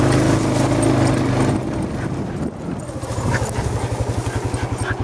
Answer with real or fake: real